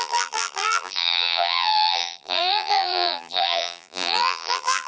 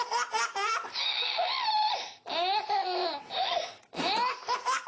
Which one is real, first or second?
second